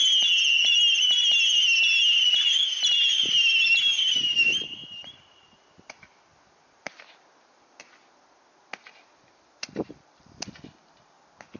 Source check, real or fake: real